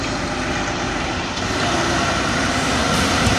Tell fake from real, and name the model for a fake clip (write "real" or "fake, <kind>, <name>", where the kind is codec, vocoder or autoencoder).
real